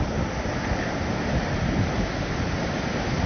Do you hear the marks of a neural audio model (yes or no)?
no